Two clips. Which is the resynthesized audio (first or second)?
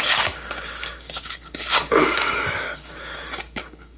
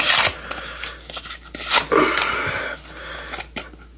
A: first